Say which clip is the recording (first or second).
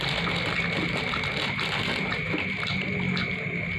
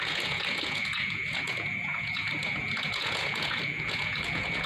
first